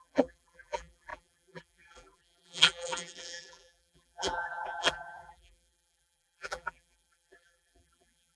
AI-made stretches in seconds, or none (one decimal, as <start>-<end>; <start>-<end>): 0.0-8.4